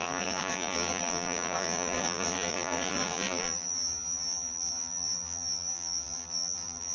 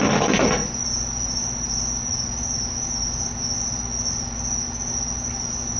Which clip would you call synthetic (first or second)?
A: first